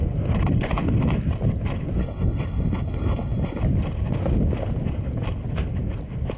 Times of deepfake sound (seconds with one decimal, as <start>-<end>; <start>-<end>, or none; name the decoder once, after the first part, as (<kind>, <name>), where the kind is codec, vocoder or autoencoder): 2.0-3.6 (codec, HILCodec)